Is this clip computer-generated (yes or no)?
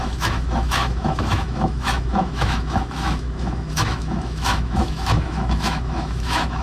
yes